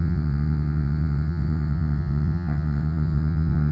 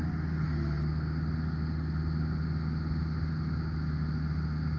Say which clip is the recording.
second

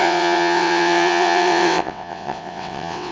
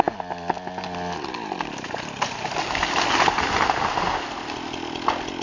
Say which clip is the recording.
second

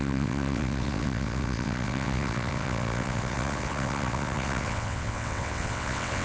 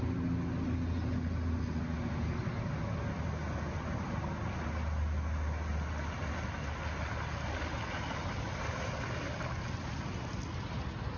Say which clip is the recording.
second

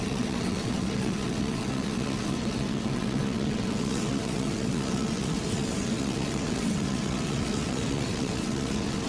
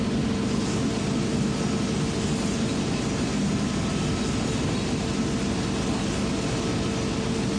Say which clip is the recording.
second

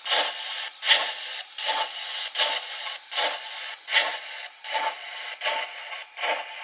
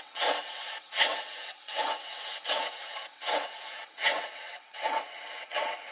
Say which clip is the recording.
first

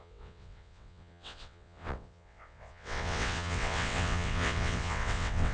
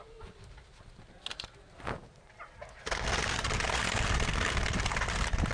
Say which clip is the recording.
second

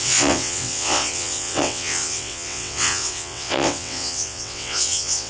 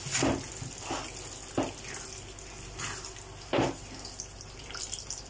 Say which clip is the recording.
second